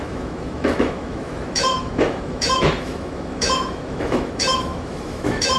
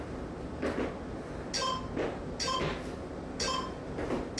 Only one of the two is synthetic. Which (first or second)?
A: first